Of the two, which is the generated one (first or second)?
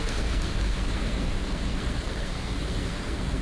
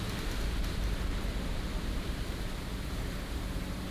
first